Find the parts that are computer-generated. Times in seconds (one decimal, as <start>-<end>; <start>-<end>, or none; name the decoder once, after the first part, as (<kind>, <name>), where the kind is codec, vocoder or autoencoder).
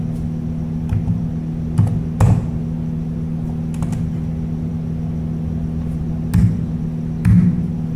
none